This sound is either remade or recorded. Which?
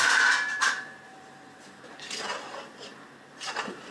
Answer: remade